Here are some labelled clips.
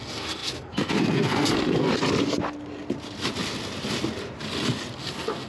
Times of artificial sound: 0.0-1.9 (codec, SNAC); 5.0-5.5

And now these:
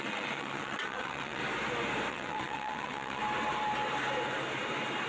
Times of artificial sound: 0.0-1.4 (vocoder, WaveNeXt); 2.1-3.2